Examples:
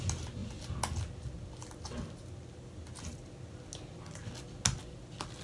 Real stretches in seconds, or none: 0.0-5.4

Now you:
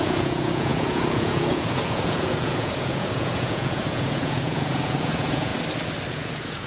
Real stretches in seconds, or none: 5.5-6.1

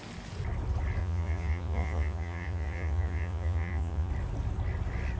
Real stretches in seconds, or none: 0.0-1.0; 4.1-5.2

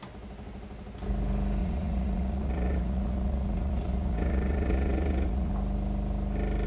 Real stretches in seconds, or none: 0.0-1.6; 5.5-6.7

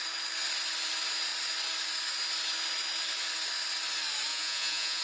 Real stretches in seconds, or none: 0.0-4.3